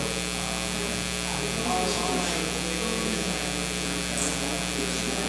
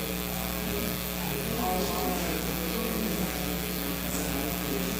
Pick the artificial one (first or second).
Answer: second